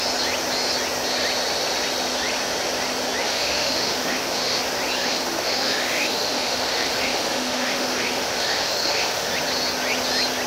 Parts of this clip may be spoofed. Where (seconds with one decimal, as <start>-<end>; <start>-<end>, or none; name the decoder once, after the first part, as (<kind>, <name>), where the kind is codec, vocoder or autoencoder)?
3.2-4.6 (autoencoder, DAC-VAE); 5.0-9.3

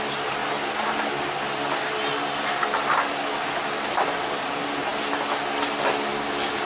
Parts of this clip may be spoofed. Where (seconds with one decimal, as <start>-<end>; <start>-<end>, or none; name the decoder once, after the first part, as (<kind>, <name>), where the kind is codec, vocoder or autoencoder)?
none

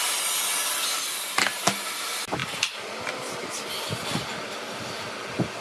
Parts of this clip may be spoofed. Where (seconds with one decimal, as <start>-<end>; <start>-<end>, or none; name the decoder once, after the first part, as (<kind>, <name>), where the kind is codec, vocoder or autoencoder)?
none

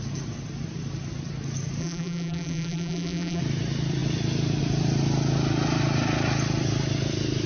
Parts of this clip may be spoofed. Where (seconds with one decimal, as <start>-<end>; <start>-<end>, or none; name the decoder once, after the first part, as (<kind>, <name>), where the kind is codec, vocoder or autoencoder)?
1.8-3.4 (vocoder, BigVGAN v2)

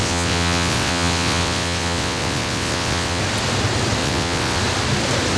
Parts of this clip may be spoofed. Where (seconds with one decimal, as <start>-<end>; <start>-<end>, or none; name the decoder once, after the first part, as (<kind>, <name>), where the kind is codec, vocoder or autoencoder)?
0.0-3.2 (vocoder, WaveNeXt); 4.0-4.6

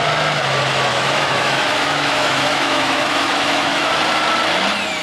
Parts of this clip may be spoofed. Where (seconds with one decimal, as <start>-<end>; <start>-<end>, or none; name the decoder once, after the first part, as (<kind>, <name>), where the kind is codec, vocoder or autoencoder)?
0.9-3.9 (autoencoder, DAC-VAE)

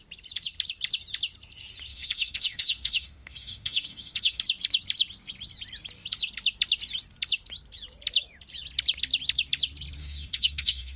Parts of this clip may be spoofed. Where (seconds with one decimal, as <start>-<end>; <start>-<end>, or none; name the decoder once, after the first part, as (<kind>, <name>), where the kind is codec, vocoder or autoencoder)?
1.9-4.4 (autoencoder, DAC-VAE); 10.0-11.0